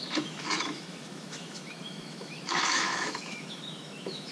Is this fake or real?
fake